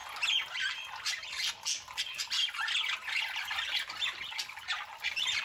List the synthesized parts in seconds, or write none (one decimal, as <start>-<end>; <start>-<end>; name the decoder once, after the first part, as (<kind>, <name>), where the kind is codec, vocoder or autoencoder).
none

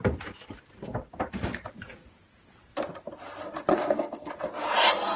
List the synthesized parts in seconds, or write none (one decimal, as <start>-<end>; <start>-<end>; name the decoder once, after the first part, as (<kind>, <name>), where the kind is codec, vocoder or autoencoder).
3.7-4.3 (codec, SNAC)